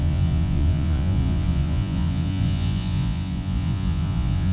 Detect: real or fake fake